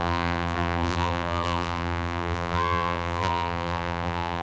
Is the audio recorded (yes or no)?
no